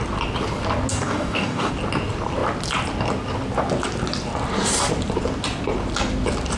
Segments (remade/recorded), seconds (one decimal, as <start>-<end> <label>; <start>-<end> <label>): 0.0-0.9 recorded; 0.9-1.7 remade; 1.7-6.6 recorded